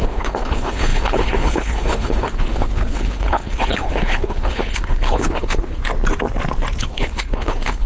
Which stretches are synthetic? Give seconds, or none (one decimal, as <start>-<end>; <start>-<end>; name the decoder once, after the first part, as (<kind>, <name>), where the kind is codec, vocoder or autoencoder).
0.0-5.8 (codec, HILCodec); 6.8-7.9